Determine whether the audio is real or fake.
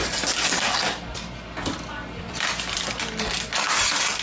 real